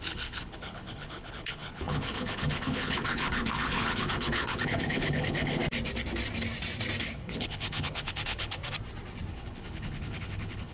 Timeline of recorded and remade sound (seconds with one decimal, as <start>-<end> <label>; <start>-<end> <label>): 0.0-5.6 remade; 5.6-7.0 recorded; 7.0-8.6 remade; 8.6-9.3 recorded; 9.3-10.7 remade